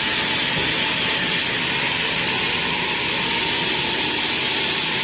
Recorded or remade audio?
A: recorded